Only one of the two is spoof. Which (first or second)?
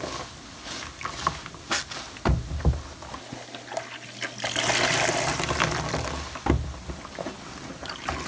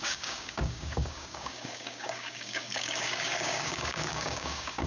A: second